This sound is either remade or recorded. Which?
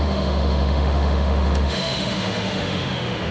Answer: remade